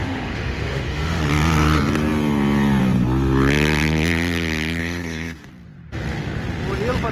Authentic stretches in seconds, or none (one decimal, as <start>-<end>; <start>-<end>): 1.2-4.8; 5.5-7.1

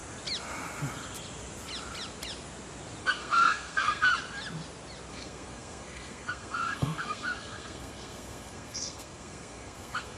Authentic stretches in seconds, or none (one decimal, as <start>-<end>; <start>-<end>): 0.0-3.0; 4.1-5.1

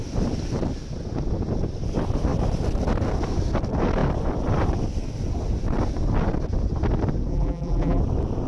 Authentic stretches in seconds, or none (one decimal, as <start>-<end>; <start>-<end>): 0.0-7.3; 8.0-8.5

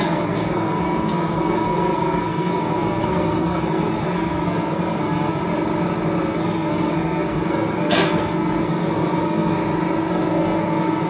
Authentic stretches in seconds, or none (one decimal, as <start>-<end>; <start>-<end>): 5.4-6.3; 9.6-10.1

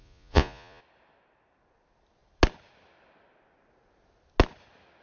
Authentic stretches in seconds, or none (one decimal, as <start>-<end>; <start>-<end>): 0.8-5.0

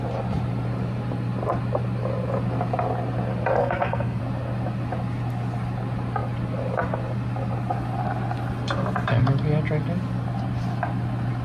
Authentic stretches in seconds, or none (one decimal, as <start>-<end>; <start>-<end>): 0.0-3.6; 4.2-11.4